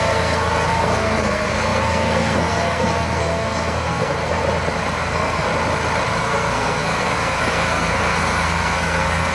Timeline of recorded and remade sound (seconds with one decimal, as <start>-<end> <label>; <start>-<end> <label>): 0.0-4.4 remade; 4.4-5.0 recorded; 5.0-5.5 remade; 5.5-6.2 recorded; 6.2-9.3 remade